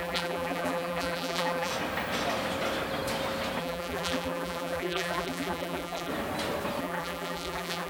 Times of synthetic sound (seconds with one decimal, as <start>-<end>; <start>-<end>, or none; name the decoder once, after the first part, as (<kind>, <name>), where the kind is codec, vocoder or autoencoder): 0.0-1.7 (vocoder, BigVGAN v2); 3.6-6.1; 6.8-7.9